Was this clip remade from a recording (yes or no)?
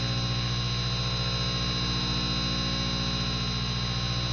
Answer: no